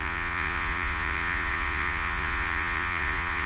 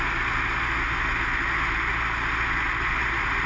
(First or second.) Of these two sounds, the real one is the second